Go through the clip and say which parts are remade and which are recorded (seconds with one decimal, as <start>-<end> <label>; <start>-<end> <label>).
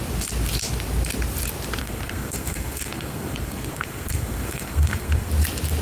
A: 0.0-1.8 recorded; 1.8-5.3 remade; 5.3-5.8 recorded